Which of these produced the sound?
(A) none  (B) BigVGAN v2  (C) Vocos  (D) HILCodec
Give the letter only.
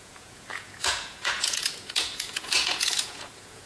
C